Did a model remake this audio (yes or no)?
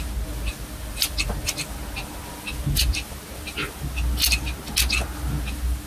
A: no